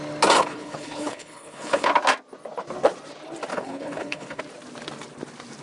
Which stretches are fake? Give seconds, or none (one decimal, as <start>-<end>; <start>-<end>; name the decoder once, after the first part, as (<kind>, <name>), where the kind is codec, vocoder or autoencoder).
0.4-1.9 (codec, HILCodec); 3.5-4.4